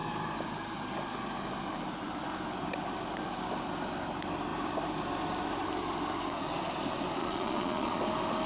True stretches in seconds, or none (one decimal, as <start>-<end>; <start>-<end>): 0.0-7.2; 8.0-8.5